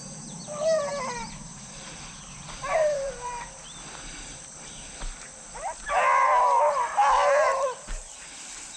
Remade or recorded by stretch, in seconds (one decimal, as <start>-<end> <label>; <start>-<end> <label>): 0.0-0.9 remade; 0.9-1.5 recorded; 1.5-3.5 remade; 3.5-8.8 recorded

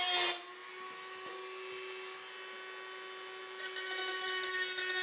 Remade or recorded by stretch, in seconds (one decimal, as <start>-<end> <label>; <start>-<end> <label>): 0.0-5.0 recorded

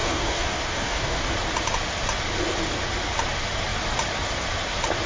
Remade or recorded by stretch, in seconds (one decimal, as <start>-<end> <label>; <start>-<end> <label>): 0.0-1.3 remade; 1.3-5.1 recorded

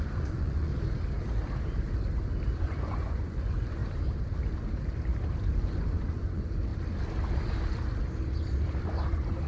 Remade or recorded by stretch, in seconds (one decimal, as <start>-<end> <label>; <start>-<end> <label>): 0.0-0.7 remade; 0.7-2.6 recorded; 2.6-3.8 remade; 3.8-5.4 recorded; 5.4-6.7 remade; 6.7-8.8 recorded; 8.8-9.5 remade